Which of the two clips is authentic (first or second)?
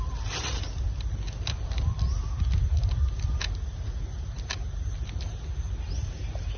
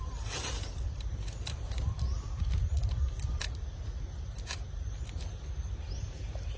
first